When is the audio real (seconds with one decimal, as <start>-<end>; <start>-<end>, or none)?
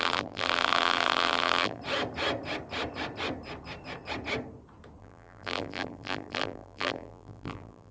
1.8-5.0